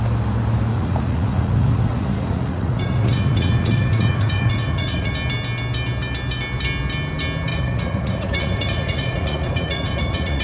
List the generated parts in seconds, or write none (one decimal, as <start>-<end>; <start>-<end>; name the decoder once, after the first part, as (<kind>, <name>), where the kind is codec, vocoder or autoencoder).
0.7-5.1 (vocoder, Vocos); 7.5-10.4